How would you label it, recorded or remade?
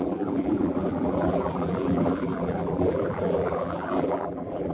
remade